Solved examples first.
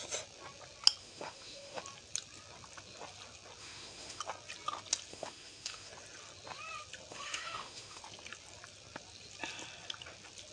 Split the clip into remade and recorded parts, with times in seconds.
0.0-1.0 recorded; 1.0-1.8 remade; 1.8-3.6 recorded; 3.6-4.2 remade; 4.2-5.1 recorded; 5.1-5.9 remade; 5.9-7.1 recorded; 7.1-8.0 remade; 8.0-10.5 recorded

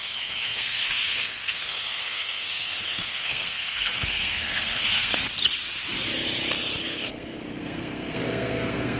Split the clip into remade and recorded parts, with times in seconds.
0.0-5.1 remade; 5.1-6.8 recorded; 6.8-9.0 remade

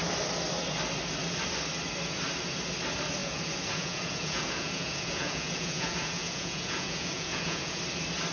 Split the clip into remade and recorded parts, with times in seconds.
0.0-3.2 recorded; 3.2-7.8 remade; 7.8-8.3 recorded

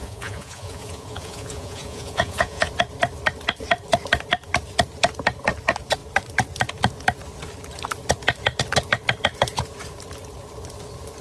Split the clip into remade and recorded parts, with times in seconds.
0.0-2.7 remade; 2.7-11.2 recorded

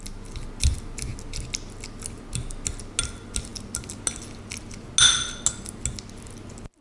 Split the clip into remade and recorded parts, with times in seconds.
0.0-6.8 recorded

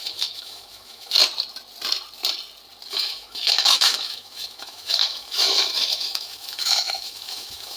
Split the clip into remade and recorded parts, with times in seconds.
0.0-1.2 remade; 1.2-2.9 recorded; 2.9-7.8 remade